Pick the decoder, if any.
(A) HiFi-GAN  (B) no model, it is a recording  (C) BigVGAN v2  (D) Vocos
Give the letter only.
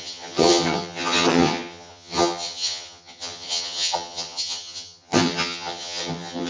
A